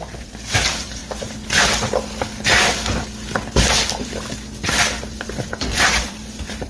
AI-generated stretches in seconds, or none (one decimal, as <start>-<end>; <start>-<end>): 0.0-1.0; 5.0-6.7